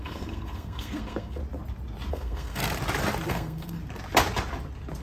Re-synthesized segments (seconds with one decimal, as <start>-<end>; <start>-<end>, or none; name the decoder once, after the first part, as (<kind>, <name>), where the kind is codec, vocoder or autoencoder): 0.0-1.4 (codec, SNAC); 2.1-2.6; 3.3-3.8

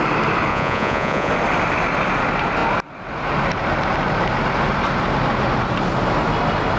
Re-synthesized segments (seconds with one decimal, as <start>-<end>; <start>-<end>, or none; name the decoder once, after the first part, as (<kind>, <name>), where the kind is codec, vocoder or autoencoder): 0.5-1.3 (vocoder, Vocos)

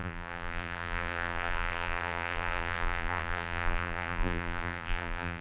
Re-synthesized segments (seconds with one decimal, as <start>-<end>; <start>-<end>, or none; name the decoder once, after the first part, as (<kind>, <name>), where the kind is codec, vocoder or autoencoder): 0.0-5.4 (vocoder, BigVGAN v2)

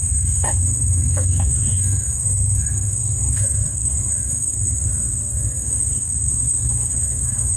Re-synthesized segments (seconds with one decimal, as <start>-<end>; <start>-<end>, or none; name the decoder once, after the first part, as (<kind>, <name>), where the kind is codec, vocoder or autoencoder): 0.0-7.6 (codec, SNAC)

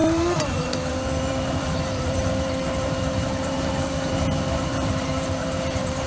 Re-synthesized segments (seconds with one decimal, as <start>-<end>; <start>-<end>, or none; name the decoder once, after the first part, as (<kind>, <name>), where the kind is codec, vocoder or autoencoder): 0.0-6.1 (vocoder, BigVGAN v2)

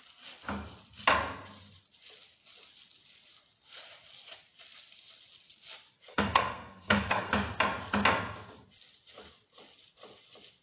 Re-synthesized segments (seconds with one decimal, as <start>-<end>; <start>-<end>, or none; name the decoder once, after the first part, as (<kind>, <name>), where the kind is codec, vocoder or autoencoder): 6.1-7.3 (codec, SNAC)

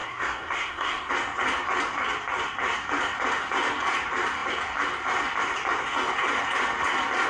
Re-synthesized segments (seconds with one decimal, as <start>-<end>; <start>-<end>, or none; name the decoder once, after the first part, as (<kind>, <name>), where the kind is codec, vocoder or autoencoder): 0.0-1.1 (codec, SNAC)